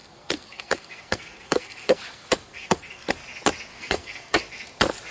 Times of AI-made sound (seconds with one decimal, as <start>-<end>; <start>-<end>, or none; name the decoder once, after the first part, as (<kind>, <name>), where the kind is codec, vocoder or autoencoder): 0.0-3.1 (codec, SNAC); 3.7-4.4